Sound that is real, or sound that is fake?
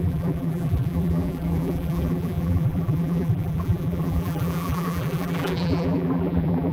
fake